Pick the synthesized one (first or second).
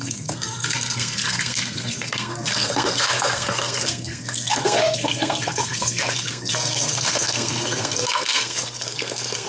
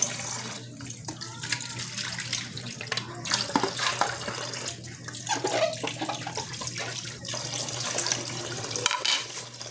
first